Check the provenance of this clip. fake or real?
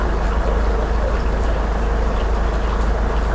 real